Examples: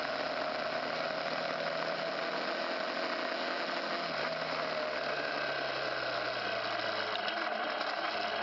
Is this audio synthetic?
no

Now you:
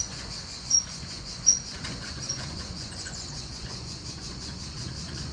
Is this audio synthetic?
yes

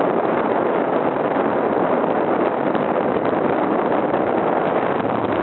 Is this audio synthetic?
no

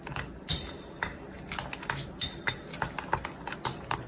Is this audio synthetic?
no